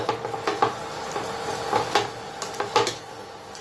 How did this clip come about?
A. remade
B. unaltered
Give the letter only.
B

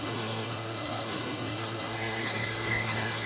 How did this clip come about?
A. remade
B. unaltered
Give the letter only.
A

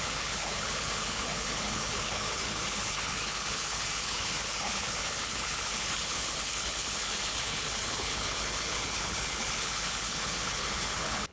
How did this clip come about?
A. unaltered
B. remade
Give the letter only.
B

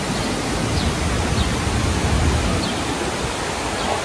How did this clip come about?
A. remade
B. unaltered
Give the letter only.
B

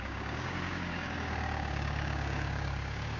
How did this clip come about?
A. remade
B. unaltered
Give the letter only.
A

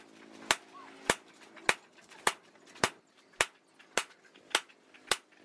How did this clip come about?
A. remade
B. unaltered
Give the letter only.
B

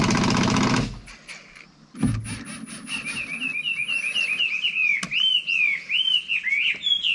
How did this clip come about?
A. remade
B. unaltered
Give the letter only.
B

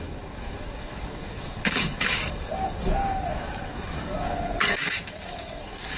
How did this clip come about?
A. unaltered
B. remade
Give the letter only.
B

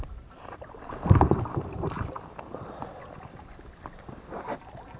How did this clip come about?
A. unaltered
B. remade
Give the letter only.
A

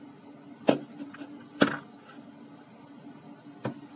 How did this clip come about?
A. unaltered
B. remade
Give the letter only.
A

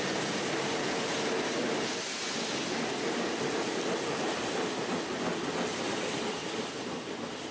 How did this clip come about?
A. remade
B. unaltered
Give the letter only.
B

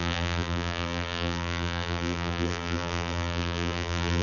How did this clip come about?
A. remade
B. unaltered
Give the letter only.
A